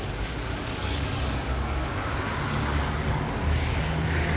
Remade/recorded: remade